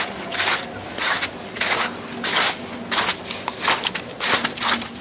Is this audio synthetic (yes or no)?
no